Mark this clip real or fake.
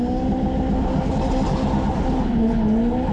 real